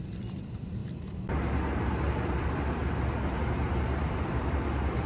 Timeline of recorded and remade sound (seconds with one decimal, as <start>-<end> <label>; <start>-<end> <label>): 0.0-0.8 remade; 0.8-2.3 recorded; 2.3-2.8 remade; 2.8-3.3 recorded; 3.3-5.1 remade